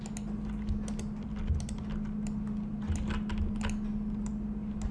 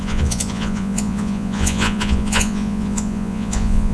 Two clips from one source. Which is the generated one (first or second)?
second